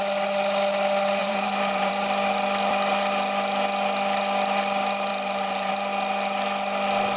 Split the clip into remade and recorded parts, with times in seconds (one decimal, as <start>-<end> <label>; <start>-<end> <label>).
0.0-1.2 recorded; 1.2-1.9 remade; 1.9-5.1 recorded; 5.1-5.7 remade; 5.7-7.2 recorded